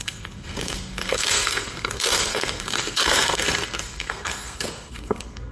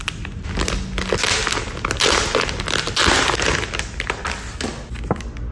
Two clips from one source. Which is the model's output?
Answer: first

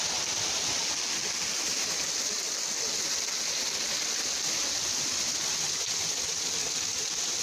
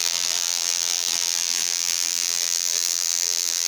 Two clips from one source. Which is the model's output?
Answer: second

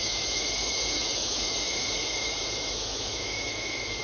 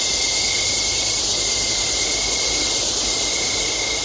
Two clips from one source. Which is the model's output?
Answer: first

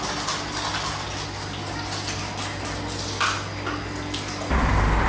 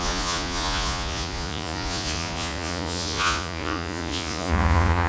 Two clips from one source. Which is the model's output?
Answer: second